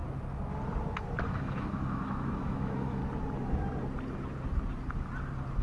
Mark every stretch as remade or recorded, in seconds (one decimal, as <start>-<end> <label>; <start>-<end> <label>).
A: 0.0-1.2 recorded; 1.2-3.0 remade; 3.0-5.6 recorded